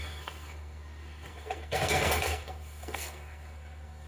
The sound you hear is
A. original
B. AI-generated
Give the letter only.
B